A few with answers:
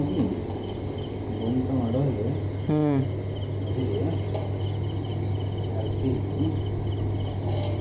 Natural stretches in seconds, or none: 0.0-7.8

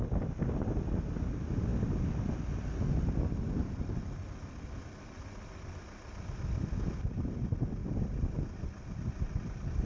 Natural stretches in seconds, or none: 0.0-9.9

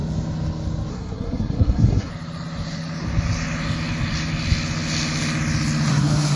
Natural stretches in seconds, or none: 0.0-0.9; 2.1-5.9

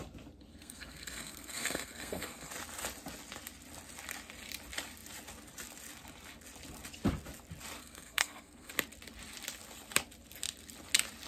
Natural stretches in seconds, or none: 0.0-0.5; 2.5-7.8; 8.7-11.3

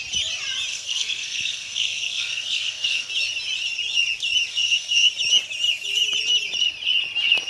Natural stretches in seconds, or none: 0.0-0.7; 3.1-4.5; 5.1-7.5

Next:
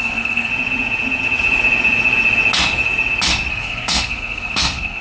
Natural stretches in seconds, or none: 0.5-3.5

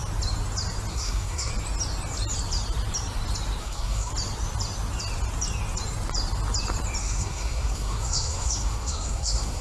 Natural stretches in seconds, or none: 0.0-0.9; 1.5-3.6; 4.1-7.0

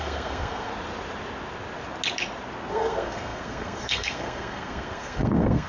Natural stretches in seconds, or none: 0.7-2.7